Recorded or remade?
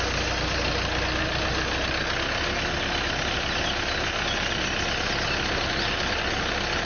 recorded